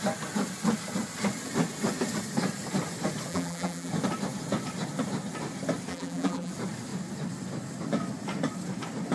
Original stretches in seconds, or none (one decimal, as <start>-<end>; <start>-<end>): 0.0-3.3; 3.9-5.9; 6.5-9.1